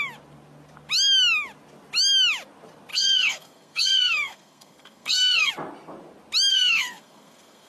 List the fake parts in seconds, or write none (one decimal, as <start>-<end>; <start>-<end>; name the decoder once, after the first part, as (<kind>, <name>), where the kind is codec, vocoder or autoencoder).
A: 2.9-5.5 (codec, SNAC); 6.5-7.7